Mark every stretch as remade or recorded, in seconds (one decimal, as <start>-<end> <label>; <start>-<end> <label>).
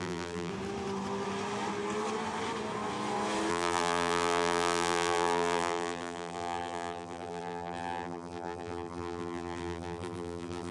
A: 0.0-0.5 remade; 0.5-3.5 recorded; 3.5-10.7 remade